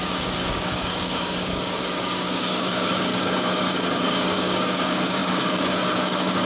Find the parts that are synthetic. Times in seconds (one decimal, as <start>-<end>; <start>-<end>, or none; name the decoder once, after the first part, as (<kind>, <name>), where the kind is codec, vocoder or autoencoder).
0.0-6.5 (codec, DAC)